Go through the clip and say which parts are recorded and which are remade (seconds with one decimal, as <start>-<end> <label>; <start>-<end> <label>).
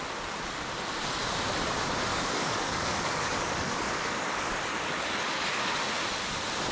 0.0-2.1 recorded; 2.1-5.9 remade; 5.9-6.7 recorded